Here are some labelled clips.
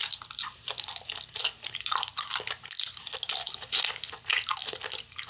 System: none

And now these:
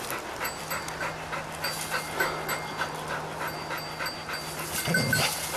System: none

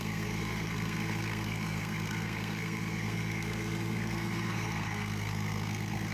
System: codec, SNAC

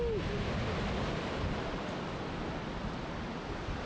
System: none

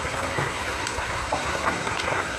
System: codec, SNAC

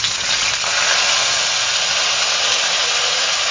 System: none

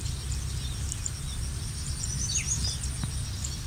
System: none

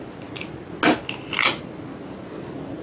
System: none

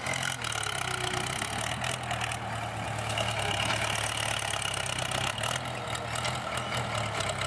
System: none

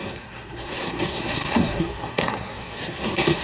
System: codec, SNAC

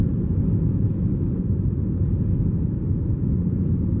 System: none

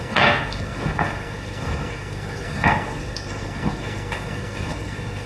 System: codec, SNAC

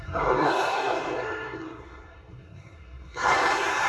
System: codec, SNAC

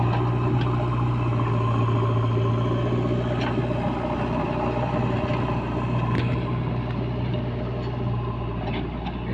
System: none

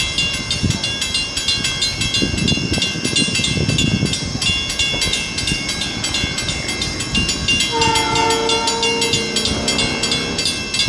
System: none